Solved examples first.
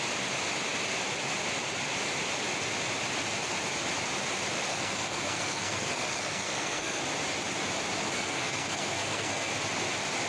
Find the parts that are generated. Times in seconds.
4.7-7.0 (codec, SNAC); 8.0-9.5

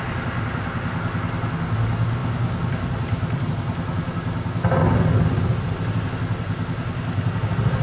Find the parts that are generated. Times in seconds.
none

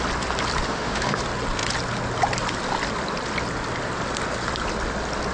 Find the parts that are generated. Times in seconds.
0.7-1.2 (autoencoder, DAC-VAE)